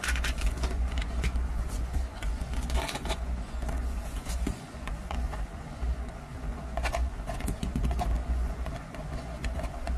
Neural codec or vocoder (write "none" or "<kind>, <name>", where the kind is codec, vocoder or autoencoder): vocoder, Vocos